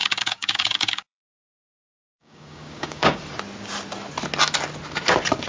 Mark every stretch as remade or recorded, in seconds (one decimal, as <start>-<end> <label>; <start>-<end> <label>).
0.0-3.2 remade; 3.2-5.5 recorded